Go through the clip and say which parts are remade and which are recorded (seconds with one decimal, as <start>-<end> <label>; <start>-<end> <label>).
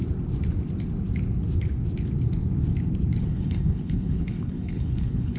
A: 0.0-3.2 recorded; 3.2-5.4 remade